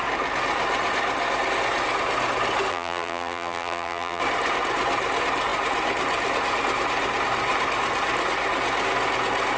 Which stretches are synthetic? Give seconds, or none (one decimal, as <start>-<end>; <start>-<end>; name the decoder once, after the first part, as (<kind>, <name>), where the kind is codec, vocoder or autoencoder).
2.7-4.2 (vocoder, BigVGAN v2)